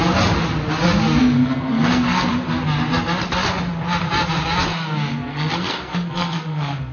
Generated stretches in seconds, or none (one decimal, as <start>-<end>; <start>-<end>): 1.2-2.3; 5.1-6.9

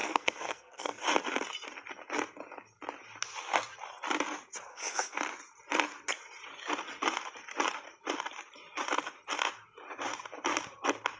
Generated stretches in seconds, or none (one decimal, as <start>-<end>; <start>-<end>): 0.0-1.0; 4.7-5.2

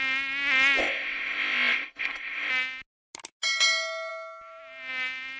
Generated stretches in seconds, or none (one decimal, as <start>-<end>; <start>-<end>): 0.8-2.5

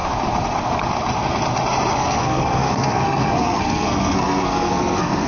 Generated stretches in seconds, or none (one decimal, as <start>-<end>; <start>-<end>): 1.9-5.3

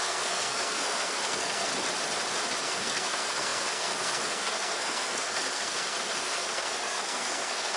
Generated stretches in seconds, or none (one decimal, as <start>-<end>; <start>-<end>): 0.0-1.7; 2.6-7.8

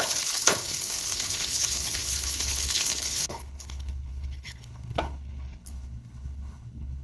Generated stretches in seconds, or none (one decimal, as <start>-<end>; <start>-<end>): 0.0-7.0

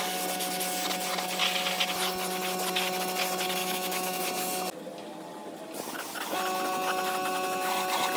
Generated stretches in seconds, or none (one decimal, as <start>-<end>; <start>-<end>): 3.6-4.2